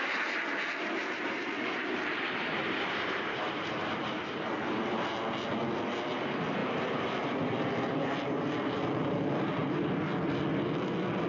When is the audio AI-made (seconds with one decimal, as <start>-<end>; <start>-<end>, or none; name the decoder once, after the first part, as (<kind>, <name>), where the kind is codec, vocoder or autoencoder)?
1.0-3.9 (vocoder, BigVGAN v2)